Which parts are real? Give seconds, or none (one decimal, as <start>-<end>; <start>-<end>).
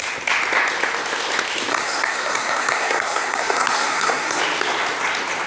0.0-1.7; 4.4-5.5